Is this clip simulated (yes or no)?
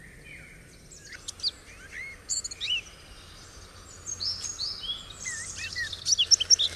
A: no